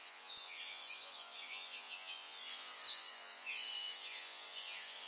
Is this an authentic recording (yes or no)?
no